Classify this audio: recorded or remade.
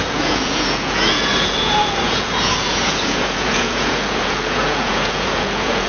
remade